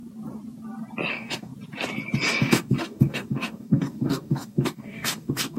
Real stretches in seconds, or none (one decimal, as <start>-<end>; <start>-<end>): 0.0-1.1; 1.5-2.4